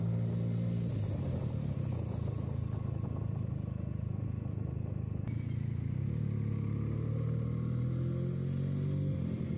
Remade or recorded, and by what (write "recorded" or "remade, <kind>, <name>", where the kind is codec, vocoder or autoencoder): recorded